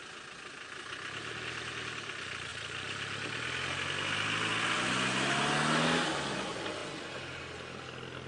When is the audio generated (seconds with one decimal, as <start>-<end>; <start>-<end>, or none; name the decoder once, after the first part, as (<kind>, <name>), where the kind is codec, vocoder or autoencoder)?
none